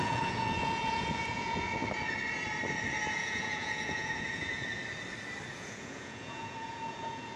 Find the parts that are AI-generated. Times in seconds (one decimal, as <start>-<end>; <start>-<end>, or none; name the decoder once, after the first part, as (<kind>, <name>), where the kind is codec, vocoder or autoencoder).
0.0-1.8 (vocoder, Vocos); 3.1-4.8; 5.5-7.4